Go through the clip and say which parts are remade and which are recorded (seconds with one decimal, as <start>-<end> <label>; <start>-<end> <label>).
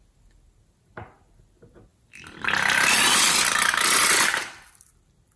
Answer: 0.0-1.9 recorded; 1.9-4.9 remade; 4.9-5.4 recorded